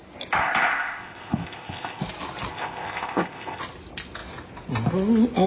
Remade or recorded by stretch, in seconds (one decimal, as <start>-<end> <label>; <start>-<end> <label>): 0.0-0.4 recorded; 0.4-2.0 remade; 2.0-2.5 recorded; 2.5-3.6 remade; 3.6-5.5 recorded